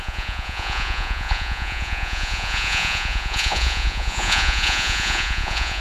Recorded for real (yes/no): no